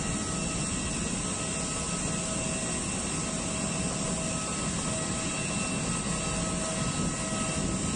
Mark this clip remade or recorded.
recorded